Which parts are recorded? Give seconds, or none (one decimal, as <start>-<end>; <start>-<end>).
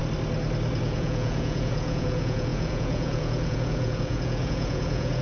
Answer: 0.0-0.8